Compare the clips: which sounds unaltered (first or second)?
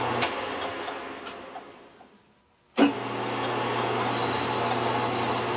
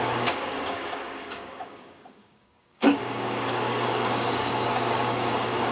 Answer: first